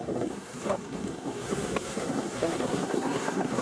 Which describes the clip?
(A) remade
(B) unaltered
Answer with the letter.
A